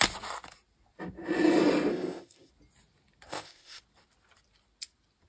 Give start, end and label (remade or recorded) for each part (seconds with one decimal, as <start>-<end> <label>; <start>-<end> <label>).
0.0-1.9 recorded; 1.9-2.5 remade; 2.5-3.3 recorded; 3.3-3.8 remade; 3.8-5.3 recorded